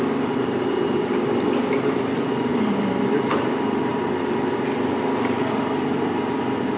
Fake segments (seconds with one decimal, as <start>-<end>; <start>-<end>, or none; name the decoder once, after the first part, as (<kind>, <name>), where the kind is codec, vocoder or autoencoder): 0.0-3.9 (vocoder, BigVGAN v2)